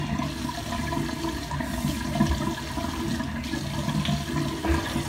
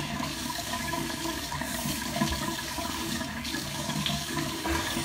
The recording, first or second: first